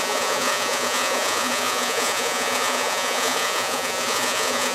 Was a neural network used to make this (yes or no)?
yes